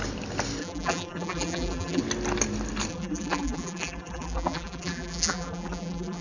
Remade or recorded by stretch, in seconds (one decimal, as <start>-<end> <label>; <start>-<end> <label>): 0.0-0.6 recorded; 0.6-2.0 remade; 2.0-2.9 recorded; 2.9-6.2 remade